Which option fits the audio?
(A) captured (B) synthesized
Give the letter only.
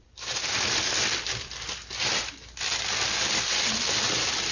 A